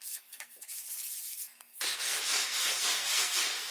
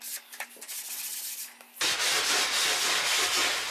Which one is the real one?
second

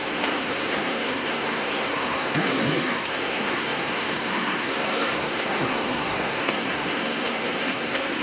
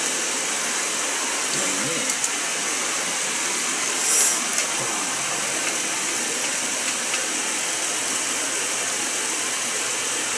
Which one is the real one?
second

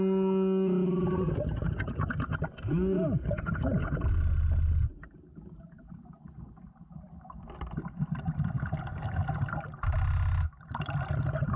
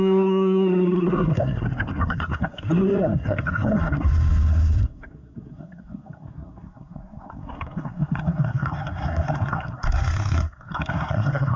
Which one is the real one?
first